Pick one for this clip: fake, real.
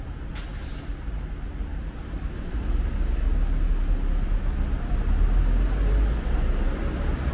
real